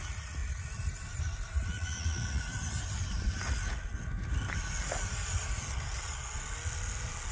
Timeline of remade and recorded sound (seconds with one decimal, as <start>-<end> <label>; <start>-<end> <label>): 0.0-0.4 remade; 0.4-1.7 recorded; 1.7-2.5 remade; 2.5-7.3 recorded